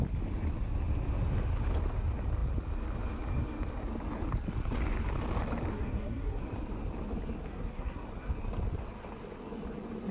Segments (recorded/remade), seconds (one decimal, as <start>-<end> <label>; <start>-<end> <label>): 0.0-5.7 recorded; 5.7-6.4 remade; 6.4-7.5 recorded; 7.5-8.1 remade; 8.1-10.1 recorded